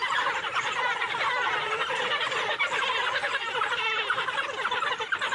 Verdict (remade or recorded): recorded